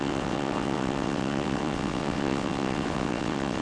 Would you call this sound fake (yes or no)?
yes